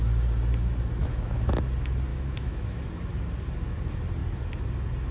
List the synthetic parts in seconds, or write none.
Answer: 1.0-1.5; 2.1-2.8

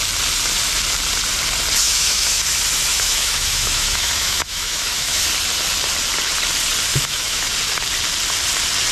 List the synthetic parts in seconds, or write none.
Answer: 1.8-2.4; 2.9-5.2; 6.9-7.5

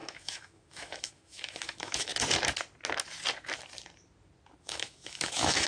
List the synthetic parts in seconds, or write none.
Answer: 0.0-2.1; 4.6-5.7

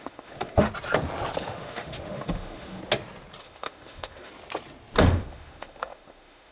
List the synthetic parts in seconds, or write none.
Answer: 0.0-0.7; 1.4-2.8; 3.4-4.3; 5.0-6.5

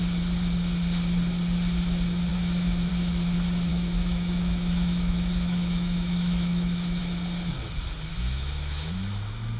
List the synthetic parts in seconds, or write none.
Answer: 2.3-2.9; 3.7-7.0; 8.1-8.9

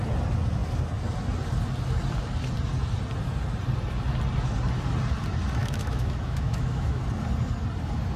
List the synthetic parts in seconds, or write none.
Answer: 5.6-7.0

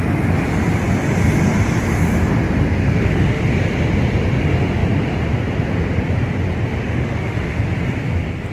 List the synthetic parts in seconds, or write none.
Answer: 2.8-3.4; 6.8-7.6

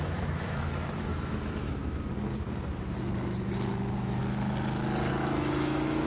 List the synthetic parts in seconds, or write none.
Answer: 0.0-1.8; 3.7-4.2; 5.1-6.1